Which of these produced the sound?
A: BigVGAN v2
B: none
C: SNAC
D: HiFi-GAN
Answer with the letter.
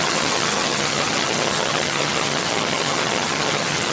D